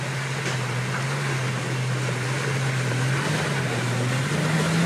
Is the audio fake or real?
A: real